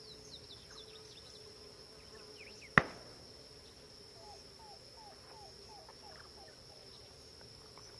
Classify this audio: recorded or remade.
recorded